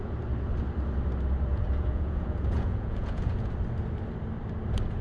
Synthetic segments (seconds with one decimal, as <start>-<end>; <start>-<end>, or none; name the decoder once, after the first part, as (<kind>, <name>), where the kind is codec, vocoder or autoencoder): 1.5-3.5 (vocoder, Vocos)